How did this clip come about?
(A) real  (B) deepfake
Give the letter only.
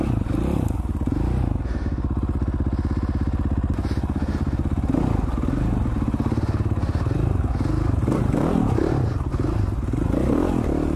A